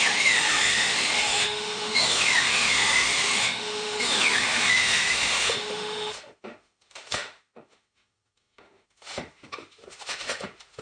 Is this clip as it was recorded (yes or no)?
no